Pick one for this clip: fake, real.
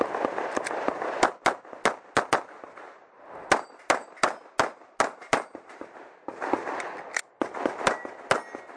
real